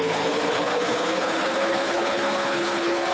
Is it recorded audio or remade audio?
remade